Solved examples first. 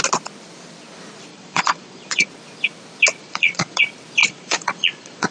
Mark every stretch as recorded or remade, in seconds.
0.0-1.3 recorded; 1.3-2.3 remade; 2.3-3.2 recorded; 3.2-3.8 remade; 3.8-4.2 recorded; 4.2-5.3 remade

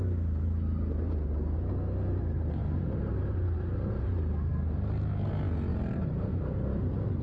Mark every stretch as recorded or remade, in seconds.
0.0-5.7 recorded; 5.7-6.3 remade; 6.3-7.2 recorded

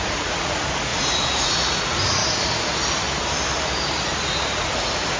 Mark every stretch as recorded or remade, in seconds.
0.0-2.2 remade; 2.2-4.2 recorded; 4.2-5.2 remade

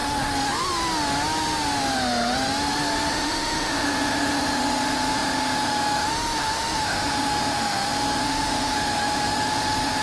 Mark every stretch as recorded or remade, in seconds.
0.0-3.1 recorded; 3.1-10.0 remade